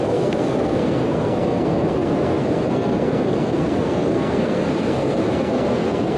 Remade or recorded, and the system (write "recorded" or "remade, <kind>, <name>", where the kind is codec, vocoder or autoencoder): remade, codec, SNAC